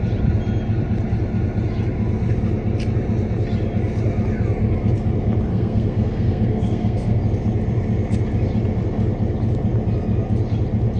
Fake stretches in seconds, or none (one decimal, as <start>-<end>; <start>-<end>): 5.5-7.2